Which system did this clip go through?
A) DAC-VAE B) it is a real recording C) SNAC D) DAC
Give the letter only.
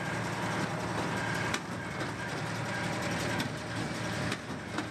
B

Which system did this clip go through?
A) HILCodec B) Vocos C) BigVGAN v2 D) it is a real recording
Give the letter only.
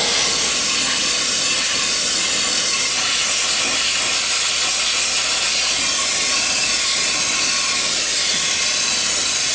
D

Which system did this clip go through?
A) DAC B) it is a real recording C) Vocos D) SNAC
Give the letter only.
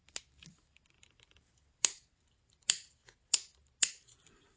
B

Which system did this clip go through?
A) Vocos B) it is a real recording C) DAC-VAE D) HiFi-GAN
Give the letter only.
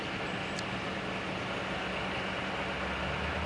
B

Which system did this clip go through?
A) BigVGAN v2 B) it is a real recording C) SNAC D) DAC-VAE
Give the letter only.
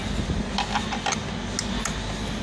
B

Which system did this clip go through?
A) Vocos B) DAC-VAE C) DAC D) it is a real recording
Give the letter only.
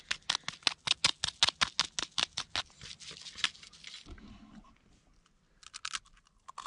D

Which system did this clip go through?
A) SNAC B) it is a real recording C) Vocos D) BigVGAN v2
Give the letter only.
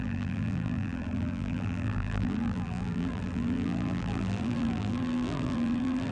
D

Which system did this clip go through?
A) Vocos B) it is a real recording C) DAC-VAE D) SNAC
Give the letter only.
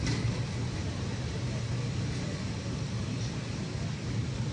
B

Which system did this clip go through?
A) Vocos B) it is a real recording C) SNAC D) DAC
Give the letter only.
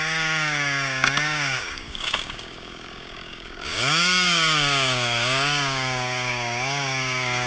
D